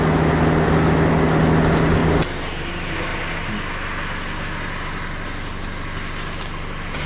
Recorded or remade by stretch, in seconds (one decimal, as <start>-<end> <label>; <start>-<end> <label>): 0.0-7.1 recorded